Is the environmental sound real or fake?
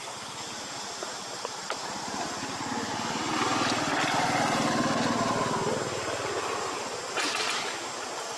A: real